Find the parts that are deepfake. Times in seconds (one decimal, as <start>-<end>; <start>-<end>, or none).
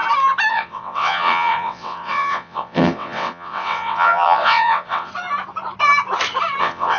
0.5-5.1; 6.6-7.0